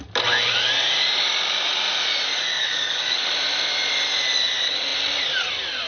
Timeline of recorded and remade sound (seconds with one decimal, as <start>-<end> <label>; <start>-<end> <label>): 0.0-2.5 recorded; 2.5-3.3 remade; 3.3-5.9 recorded